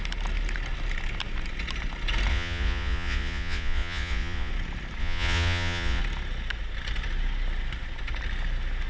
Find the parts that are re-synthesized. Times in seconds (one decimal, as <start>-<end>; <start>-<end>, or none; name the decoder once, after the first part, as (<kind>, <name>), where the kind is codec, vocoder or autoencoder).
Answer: 2.3-4.5 (vocoder, Vocos); 5.0-6.0